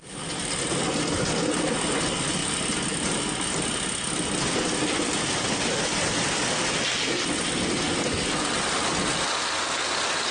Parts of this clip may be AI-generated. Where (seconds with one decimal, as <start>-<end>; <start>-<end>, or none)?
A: none